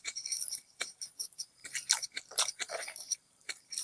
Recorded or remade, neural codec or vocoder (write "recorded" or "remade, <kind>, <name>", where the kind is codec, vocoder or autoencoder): remade, vocoder, BigVGAN v2